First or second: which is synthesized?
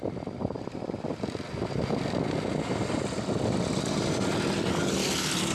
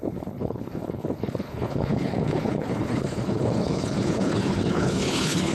second